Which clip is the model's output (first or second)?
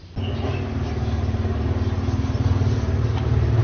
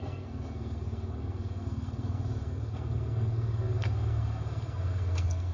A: second